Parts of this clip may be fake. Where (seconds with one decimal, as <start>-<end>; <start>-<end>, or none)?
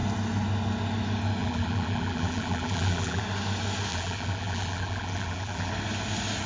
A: 1.4-3.2; 3.9-5.7